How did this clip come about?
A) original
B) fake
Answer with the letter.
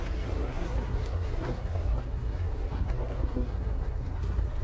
B